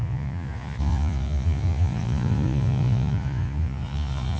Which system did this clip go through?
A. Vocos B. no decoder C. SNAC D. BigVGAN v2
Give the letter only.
A